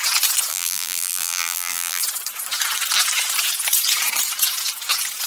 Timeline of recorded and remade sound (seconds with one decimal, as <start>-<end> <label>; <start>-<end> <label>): 0.0-0.5 recorded; 0.5-2.0 remade; 2.0-5.3 recorded